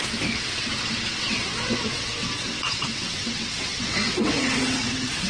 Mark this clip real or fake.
fake